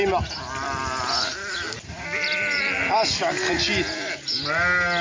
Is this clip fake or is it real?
real